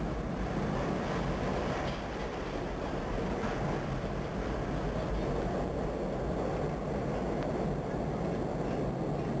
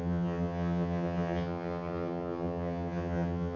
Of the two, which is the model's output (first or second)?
second